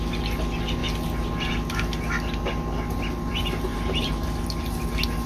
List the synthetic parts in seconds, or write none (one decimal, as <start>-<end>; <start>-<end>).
3.7-4.4